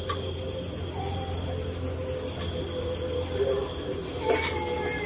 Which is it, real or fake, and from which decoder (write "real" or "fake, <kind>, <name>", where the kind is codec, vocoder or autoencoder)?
real